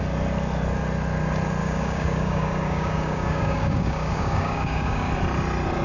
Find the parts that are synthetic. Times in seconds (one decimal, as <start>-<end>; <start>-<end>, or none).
1.6-5.1